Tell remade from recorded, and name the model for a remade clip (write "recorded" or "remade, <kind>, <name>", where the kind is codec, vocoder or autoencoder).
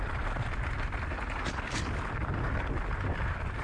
recorded